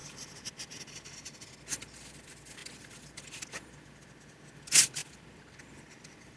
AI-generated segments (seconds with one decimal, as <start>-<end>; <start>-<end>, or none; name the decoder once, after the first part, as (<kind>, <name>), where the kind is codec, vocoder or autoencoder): none